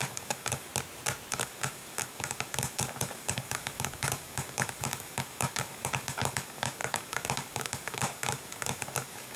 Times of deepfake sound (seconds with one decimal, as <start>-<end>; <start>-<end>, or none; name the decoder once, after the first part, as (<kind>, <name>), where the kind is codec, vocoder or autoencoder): 0.0-0.7 (codec, DAC); 1.3-9.4